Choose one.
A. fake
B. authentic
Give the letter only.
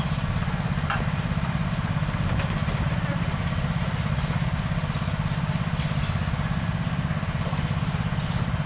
B